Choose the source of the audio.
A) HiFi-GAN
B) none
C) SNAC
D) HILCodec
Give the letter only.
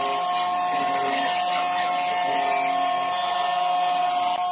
B